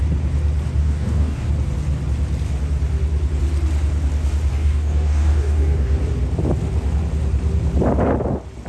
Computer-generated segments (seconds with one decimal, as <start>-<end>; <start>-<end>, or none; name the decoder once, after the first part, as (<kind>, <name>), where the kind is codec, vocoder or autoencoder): 0.8-1.5 (codec, DAC); 4.5-6.0